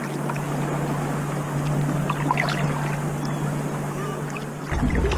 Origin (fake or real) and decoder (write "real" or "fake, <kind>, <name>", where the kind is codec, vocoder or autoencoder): real